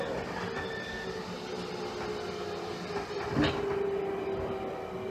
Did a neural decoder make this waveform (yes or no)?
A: no